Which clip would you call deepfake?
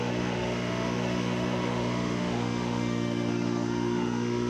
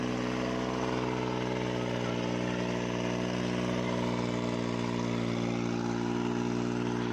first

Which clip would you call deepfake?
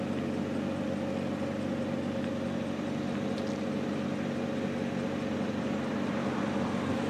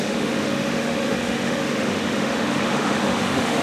second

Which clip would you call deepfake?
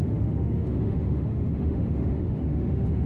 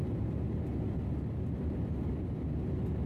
first